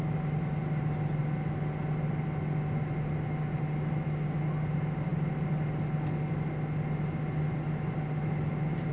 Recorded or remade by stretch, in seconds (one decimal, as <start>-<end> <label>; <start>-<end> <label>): 0.0-8.9 recorded